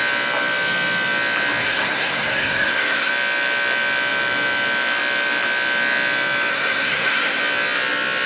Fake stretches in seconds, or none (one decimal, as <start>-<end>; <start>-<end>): 1.6-3.1; 6.5-7.4